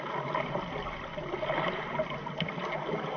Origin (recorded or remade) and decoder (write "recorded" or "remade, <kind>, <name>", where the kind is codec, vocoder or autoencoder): recorded